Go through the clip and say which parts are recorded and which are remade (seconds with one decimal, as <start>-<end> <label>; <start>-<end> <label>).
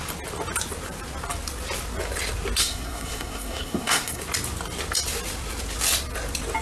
0.0-2.6 recorded; 2.6-4.2 remade; 4.2-6.6 recorded